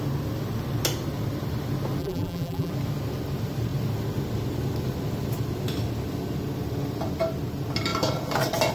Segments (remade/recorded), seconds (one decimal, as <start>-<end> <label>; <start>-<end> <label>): 0.0-2.0 recorded; 2.0-2.7 remade; 2.7-8.7 recorded